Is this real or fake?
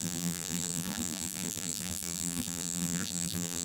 fake